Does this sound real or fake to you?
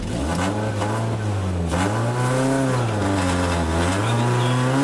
real